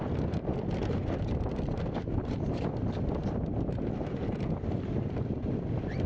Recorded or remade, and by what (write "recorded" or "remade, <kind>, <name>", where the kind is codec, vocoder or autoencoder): recorded